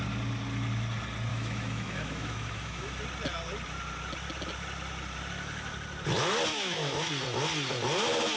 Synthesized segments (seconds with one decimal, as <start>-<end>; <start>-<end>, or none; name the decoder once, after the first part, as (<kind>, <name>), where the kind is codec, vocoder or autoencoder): 1.3-3.0 (autoencoder, DAC-VAE); 6.5-7.1